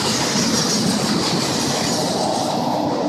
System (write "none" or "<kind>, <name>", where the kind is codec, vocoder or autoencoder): none